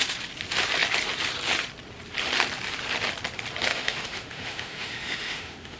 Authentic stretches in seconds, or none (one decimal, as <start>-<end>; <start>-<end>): 0.0-3.7